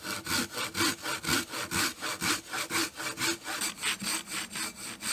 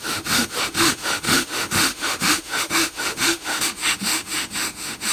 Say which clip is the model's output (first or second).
second